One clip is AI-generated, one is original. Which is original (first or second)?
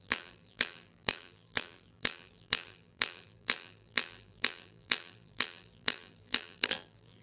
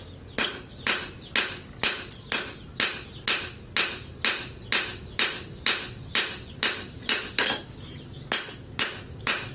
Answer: second